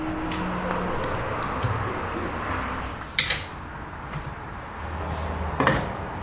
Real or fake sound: real